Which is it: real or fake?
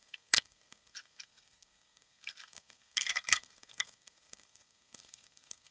fake